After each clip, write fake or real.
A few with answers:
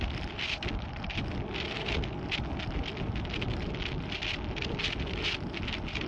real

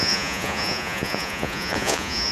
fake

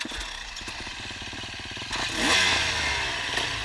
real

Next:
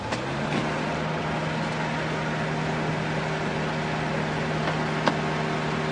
real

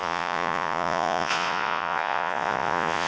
fake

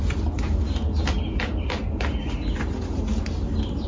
real